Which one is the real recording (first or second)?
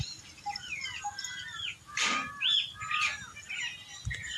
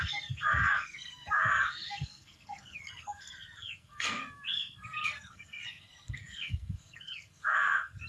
first